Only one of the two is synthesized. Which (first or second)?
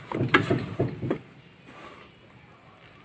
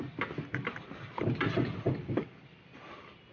second